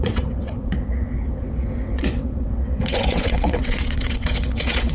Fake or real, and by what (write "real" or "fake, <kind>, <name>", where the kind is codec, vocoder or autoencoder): fake, vocoder, WaveNeXt